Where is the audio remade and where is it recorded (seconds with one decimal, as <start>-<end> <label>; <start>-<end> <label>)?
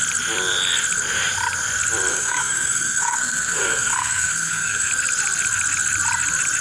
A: 0.0-2.1 recorded; 2.1-4.9 remade; 4.9-6.6 recorded